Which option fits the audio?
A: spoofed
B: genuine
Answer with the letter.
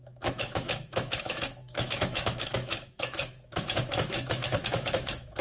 A